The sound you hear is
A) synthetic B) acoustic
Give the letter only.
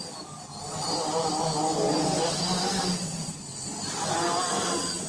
B